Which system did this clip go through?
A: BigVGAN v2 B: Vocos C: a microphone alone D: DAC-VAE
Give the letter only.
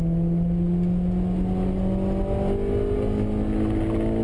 C